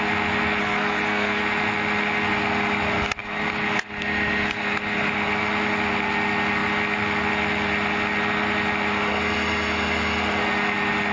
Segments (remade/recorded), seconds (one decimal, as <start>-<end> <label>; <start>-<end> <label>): 0.0-0.6 recorded; 0.6-1.4 remade; 1.4-11.1 recorded